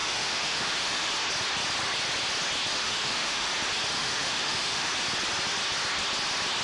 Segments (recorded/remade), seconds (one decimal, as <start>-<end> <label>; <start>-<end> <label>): 0.0-1.1 remade; 1.1-2.7 recorded; 2.7-3.5 remade; 3.5-4.0 recorded; 4.0-4.9 remade; 4.9-6.6 recorded